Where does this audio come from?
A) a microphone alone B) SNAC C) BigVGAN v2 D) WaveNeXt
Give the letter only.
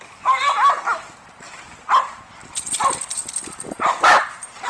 A